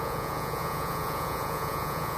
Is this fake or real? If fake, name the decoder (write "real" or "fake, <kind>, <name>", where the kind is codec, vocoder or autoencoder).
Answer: fake, vocoder, Vocos